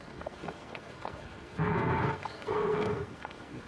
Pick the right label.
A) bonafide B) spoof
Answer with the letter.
B